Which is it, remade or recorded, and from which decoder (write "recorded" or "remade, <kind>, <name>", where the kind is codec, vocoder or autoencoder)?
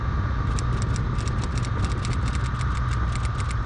recorded